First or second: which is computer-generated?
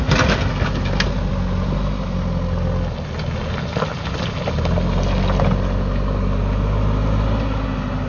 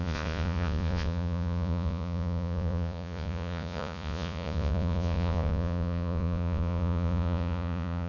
second